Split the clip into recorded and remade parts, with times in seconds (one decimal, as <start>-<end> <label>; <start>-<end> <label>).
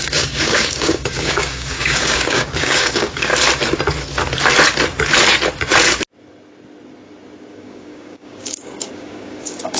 0.0-3.3 remade; 3.3-7.5 recorded; 7.5-9.8 remade